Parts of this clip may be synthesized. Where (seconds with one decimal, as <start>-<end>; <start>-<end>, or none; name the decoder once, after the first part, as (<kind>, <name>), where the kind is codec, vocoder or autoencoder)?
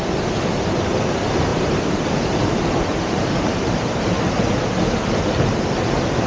1.5-4.4 (vocoder, BigVGAN v2)